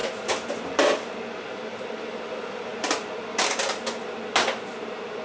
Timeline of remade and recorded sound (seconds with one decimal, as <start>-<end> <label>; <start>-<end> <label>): 0.0-5.2 recorded